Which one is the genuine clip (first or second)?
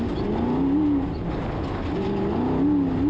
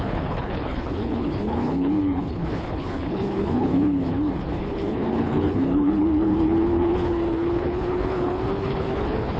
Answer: first